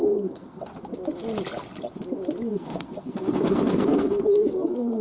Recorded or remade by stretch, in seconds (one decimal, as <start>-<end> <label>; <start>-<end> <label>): 0.0-0.7 remade; 0.7-2.5 recorded; 2.5-5.0 remade